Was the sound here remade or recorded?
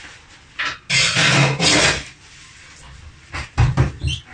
recorded